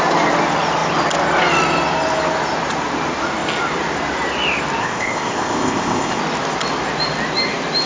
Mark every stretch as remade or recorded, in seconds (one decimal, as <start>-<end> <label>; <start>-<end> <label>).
0.0-4.8 recorded; 4.8-6.2 remade; 6.2-7.9 recorded

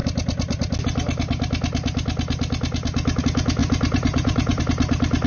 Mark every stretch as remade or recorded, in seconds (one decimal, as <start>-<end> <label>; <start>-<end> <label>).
0.0-3.6 recorded; 3.6-4.6 remade; 4.6-5.3 recorded

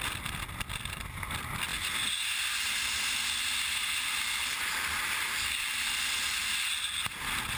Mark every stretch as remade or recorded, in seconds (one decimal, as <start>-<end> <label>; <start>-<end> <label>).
0.0-7.6 recorded

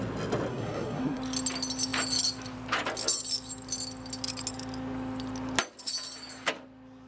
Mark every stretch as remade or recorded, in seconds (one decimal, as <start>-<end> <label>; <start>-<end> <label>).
0.0-0.5 recorded; 0.5-1.2 remade; 1.2-7.1 recorded